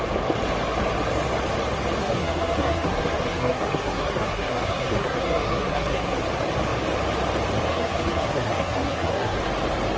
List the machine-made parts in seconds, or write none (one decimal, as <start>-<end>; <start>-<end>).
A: 2.0-6.2; 7.7-9.4